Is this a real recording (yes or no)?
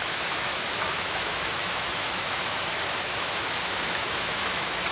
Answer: no